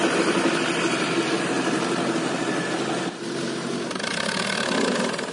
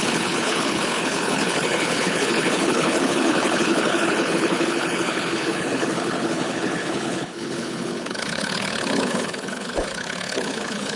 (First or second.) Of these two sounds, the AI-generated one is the second